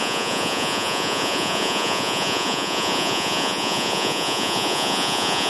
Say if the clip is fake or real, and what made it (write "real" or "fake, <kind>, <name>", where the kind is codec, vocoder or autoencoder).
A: fake, vocoder, Vocos